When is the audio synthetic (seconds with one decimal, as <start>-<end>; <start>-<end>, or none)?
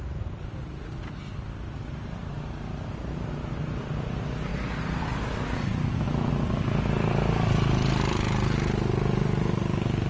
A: none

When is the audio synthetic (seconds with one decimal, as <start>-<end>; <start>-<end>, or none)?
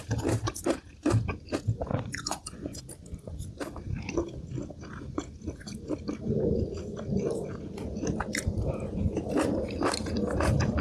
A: 1.9-2.8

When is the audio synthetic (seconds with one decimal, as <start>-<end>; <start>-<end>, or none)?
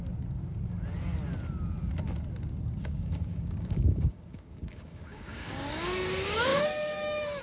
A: 2.8-7.4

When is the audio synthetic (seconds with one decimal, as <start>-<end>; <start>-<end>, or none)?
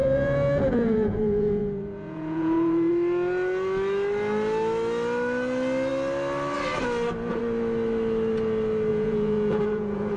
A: 0.0-2.9; 8.9-10.2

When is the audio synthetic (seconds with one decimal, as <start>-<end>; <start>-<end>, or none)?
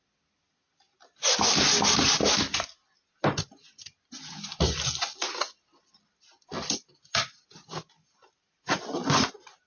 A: none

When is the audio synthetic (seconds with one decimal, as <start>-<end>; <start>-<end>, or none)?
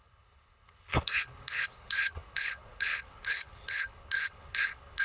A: 0.0-5.0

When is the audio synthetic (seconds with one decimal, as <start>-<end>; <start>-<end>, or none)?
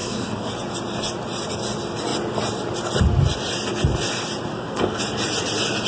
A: 0.0-0.5; 4.5-5.0